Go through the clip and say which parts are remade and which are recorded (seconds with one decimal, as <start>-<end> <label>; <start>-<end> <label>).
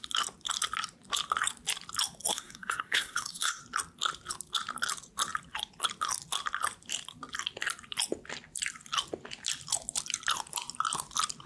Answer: 0.0-2.3 recorded; 2.3-3.6 remade; 3.6-11.5 recorded